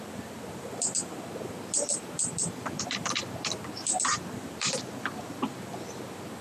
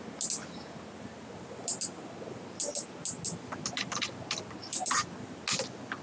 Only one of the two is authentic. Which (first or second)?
second